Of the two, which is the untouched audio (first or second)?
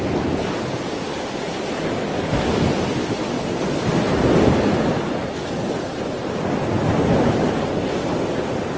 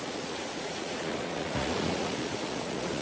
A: first